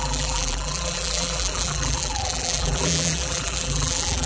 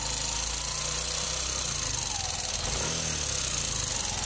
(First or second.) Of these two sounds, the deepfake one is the first